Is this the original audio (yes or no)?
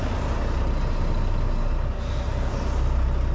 yes